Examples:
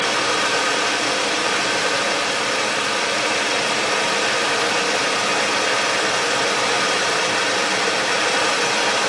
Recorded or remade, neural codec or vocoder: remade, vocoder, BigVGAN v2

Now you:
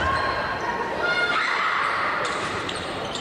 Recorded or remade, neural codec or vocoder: remade, vocoder, BigVGAN v2